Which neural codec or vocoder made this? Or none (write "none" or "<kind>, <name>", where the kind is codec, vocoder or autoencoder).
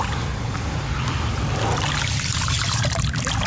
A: none